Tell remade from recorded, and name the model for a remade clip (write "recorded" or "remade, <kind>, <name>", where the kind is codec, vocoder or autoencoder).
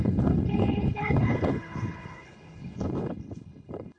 remade, codec, HILCodec